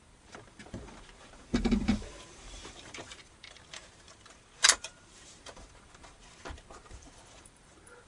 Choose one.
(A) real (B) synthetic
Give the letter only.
B